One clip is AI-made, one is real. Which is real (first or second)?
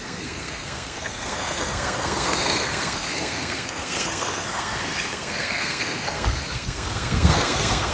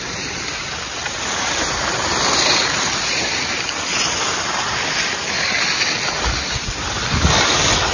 second